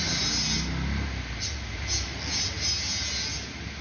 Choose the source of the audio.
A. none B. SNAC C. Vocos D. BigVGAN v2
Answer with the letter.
A